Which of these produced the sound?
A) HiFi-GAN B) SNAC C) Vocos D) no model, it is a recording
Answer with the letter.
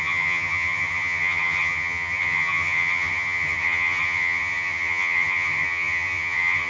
A